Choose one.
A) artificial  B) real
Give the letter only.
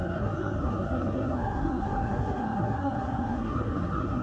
A